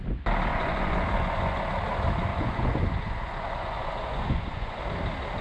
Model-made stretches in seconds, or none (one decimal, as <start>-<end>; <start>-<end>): 0.5-1.6; 2.3-4.8